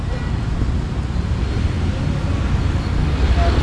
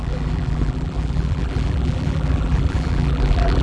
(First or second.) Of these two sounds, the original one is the first